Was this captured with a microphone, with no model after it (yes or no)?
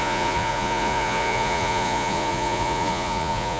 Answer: no